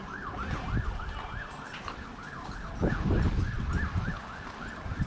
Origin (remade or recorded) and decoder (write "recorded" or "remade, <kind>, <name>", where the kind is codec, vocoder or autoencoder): remade, vocoder, BigVGAN v2